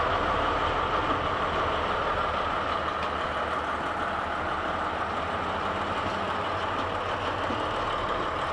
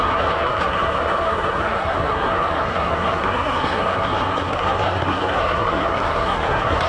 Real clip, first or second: first